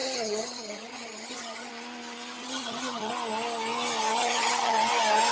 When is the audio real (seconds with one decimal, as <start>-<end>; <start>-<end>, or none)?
1.7-2.4; 3.1-4.1; 4.8-5.3